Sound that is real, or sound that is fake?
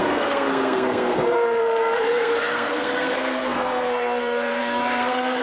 fake